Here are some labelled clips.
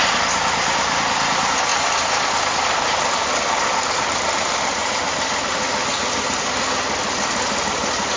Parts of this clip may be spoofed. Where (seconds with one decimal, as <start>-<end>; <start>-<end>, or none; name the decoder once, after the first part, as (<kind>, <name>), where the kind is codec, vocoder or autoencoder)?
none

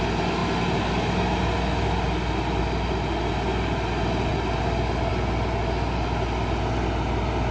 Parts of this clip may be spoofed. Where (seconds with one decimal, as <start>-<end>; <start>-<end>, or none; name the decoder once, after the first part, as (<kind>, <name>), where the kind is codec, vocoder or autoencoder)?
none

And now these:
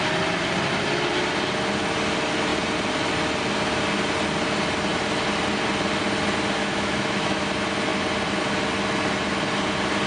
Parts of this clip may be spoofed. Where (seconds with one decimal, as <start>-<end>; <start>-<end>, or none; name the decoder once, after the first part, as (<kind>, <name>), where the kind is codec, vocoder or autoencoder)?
6.6-7.5 (autoencoder, DAC-VAE)

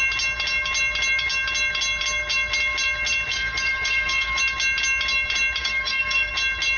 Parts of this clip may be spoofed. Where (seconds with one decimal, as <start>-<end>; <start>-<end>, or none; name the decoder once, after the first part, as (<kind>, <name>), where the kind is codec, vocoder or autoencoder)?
3.3-4.4 (codec, DAC); 5.6-6.3

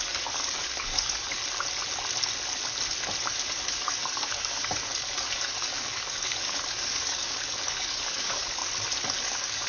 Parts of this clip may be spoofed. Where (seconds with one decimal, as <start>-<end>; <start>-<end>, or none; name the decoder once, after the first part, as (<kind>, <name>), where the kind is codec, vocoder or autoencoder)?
0.0-1.4 (codec, DAC); 3.2-8.6; 9.2-9.7

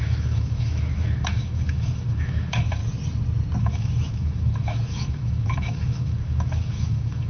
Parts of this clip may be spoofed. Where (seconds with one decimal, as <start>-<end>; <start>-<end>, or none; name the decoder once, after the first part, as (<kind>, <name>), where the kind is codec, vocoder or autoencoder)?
0.0-2.8 (autoencoder, DAC-VAE); 3.6-7.3

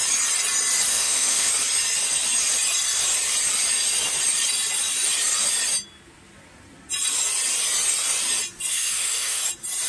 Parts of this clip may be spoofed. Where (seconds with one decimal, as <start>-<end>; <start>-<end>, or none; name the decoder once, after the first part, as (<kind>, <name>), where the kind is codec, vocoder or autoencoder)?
0.9-1.5 (autoencoder, DAC-VAE); 8.7-9.4